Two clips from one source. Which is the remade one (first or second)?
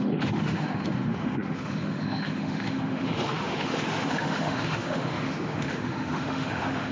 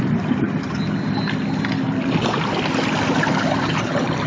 first